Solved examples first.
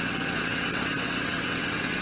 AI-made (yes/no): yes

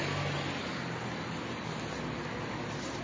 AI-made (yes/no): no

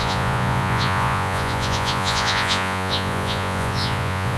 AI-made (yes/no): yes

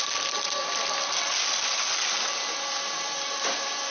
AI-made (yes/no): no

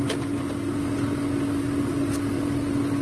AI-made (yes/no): no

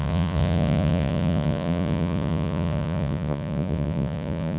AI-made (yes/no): yes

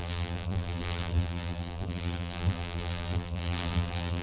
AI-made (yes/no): yes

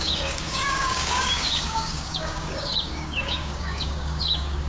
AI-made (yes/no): yes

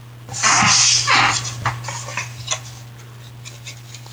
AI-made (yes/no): no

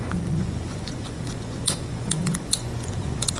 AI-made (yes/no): yes